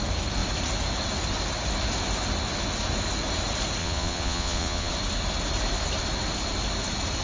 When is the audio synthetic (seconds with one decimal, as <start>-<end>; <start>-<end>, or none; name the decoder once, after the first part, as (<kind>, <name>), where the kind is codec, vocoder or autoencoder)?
3.8-4.9 (vocoder, Vocos)